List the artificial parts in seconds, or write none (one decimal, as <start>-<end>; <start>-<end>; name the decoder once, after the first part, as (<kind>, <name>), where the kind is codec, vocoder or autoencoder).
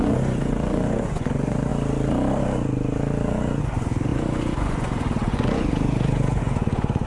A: 0.0-1.7 (vocoder, Vocos); 3.6-7.1